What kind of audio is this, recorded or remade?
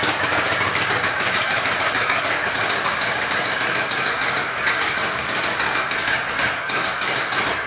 remade